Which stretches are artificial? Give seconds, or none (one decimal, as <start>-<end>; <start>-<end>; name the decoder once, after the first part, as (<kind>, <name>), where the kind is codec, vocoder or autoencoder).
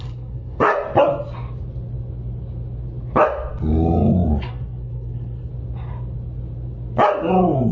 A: 0.0-0.7 (codec, SNAC); 4.4-5.5